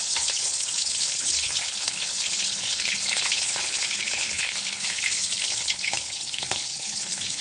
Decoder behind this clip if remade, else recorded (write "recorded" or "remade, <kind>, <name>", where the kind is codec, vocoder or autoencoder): remade, codec, HILCodec